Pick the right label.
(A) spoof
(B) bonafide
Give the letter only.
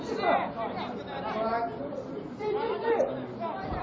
B